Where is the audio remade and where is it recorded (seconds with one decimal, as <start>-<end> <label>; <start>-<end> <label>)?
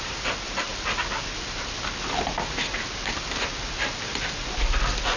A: 0.0-5.2 recorded